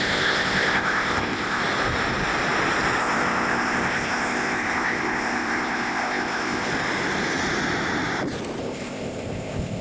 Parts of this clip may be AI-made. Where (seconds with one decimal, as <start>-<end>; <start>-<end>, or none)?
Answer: 0.0-1.6; 3.0-6.7; 8.6-9.8